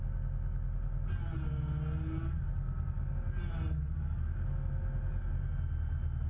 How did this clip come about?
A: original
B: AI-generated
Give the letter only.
A